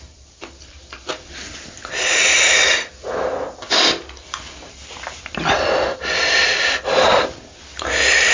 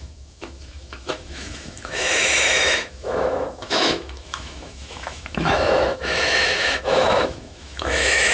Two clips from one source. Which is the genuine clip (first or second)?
first